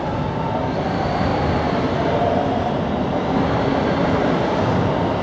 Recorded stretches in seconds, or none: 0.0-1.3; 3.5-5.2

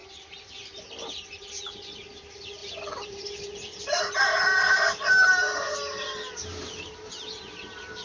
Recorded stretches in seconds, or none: 0.8-2.6; 4.0-8.0

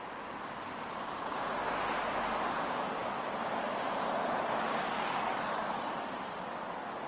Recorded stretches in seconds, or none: 0.0-7.1